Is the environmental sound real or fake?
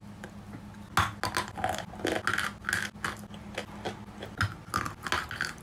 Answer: real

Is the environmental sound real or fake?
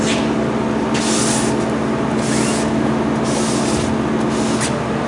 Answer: real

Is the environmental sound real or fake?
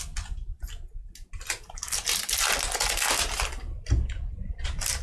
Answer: real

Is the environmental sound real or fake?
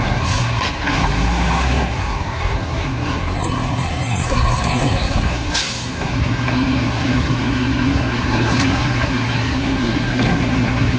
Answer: fake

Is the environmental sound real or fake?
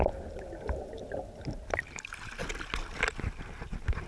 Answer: real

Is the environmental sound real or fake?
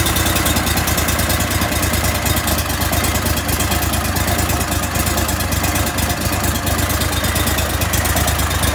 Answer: real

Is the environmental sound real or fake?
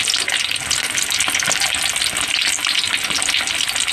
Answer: real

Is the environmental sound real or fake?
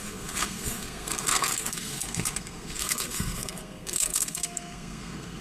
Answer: fake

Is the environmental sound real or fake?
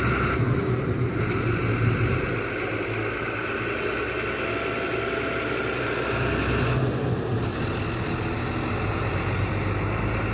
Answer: real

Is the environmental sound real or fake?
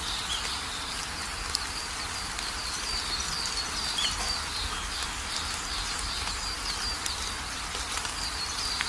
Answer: real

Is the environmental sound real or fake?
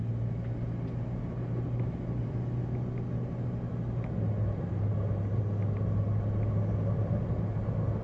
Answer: real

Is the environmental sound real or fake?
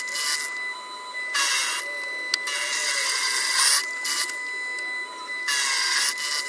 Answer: real